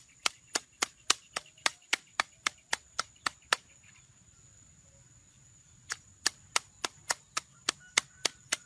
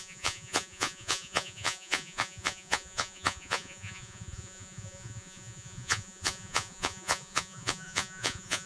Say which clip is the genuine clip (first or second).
first